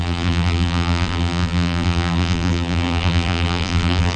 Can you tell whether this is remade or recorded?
remade